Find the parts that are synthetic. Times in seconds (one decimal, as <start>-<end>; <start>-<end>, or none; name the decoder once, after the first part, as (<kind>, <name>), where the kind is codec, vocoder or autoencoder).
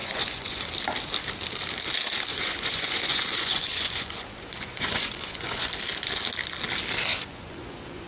0.0-0.6 (vocoder, Vocos); 2.3-5.7; 7.1-8.1